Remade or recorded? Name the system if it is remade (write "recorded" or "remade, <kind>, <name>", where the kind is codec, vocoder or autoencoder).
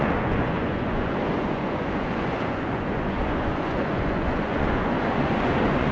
remade, vocoder, Vocos